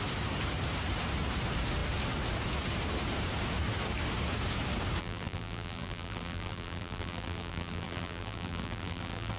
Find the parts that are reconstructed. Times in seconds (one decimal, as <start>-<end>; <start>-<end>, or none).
5.0-9.4